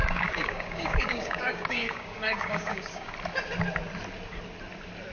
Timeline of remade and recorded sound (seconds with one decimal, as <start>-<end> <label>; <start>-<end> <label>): 0.0-3.1 remade; 3.1-5.1 recorded

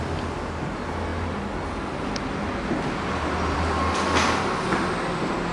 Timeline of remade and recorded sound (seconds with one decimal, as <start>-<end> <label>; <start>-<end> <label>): 0.0-5.5 recorded

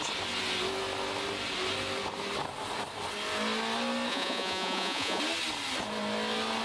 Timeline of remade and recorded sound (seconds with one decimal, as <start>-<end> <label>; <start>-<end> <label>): 0.0-4.1 recorded; 4.1-5.2 remade; 5.2-6.6 recorded

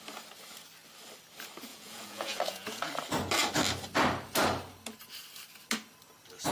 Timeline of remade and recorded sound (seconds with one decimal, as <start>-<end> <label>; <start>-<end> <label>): 0.0-1.7 recorded; 1.7-2.9 remade; 2.9-6.5 recorded

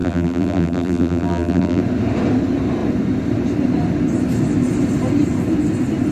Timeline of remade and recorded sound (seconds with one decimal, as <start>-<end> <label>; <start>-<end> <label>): 0.0-1.8 remade; 1.8-6.1 recorded